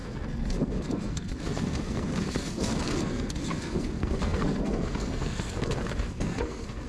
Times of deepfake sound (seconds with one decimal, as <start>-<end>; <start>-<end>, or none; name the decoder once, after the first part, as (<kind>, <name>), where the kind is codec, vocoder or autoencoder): 0.0-6.9 (codec, SNAC)